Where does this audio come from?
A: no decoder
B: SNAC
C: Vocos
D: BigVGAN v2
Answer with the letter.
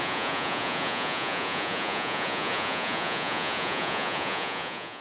C